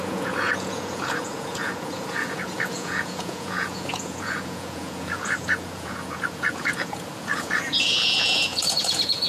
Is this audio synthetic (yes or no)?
yes